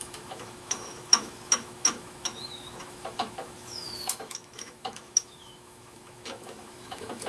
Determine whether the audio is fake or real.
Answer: fake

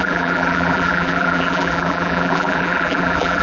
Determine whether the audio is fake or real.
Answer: fake